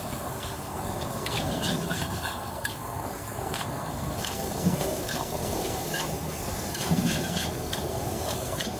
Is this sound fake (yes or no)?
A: yes